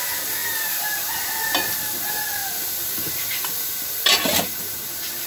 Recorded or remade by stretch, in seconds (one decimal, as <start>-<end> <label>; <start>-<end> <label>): 0.0-5.3 recorded